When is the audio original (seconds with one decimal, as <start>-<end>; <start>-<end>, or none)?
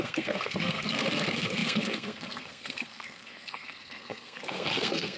none